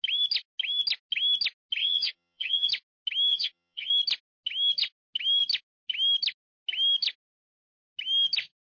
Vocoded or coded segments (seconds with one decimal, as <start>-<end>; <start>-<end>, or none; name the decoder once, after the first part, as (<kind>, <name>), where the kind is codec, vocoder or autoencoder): 1.8-2.7 (vocoder, HiFi-GAN); 3.3-3.9